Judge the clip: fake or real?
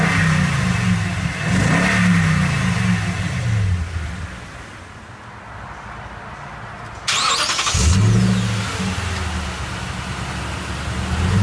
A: real